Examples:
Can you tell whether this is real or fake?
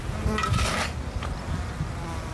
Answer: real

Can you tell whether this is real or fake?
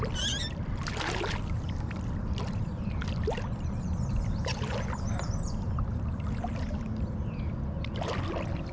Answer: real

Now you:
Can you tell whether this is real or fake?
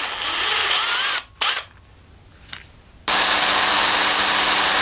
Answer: real